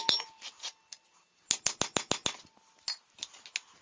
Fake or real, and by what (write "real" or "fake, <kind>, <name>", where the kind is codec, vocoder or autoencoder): real